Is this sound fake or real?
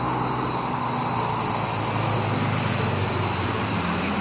real